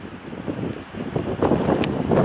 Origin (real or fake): real